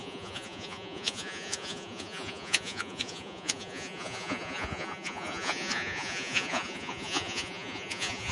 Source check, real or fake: fake